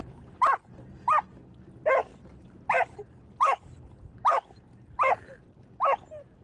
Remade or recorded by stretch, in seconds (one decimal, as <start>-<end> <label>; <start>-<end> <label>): 0.0-6.4 recorded